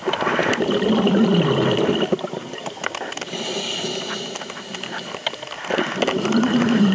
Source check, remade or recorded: recorded